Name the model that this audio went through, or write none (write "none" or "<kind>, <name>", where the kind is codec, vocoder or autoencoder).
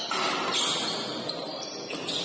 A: none